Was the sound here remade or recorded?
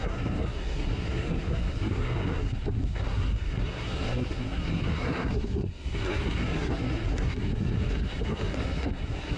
remade